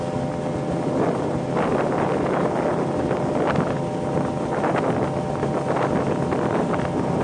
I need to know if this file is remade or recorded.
recorded